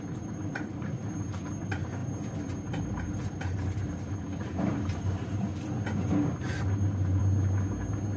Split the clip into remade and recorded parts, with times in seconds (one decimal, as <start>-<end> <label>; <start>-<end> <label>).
0.0-5.5 remade; 5.5-6.6 recorded; 6.6-7.2 remade; 7.2-8.2 recorded